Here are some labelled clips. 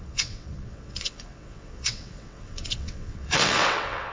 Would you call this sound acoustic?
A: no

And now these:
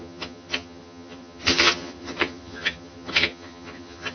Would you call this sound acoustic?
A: no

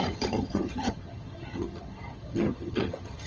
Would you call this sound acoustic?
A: no